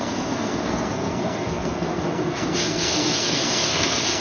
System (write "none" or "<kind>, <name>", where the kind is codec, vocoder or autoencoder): codec, SNAC